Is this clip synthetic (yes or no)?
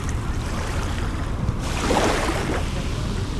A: yes